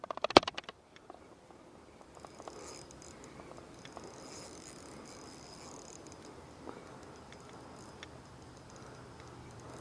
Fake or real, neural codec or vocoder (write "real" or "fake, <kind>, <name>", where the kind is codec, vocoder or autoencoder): real